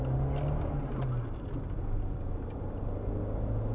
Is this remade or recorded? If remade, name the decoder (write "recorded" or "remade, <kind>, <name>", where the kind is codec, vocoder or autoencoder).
recorded